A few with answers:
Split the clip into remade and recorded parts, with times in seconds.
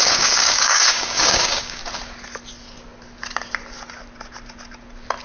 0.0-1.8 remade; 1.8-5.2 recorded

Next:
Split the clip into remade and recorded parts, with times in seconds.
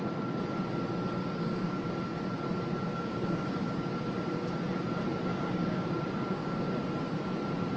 0.0-1.2 recorded; 1.2-1.9 remade; 1.9-2.9 recorded; 2.9-4.1 remade; 4.1-5.3 recorded; 5.3-6.8 remade; 6.8-7.8 recorded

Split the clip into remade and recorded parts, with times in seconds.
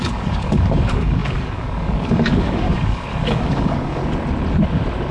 0.0-4.0 remade; 4.0-5.1 recorded